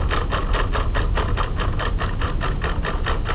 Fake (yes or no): no